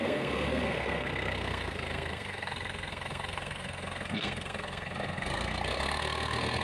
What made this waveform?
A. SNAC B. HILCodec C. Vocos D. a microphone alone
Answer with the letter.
A